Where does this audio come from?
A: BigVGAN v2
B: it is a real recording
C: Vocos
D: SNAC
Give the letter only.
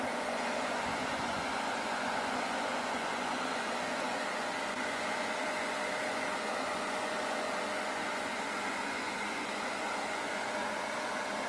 C